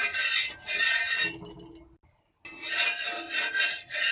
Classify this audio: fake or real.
real